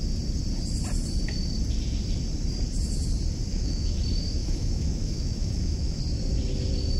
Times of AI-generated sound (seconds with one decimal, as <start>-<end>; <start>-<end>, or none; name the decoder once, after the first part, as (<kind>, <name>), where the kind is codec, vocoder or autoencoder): 3.5-4.0 (autoencoder, DAC-VAE); 4.4-6.0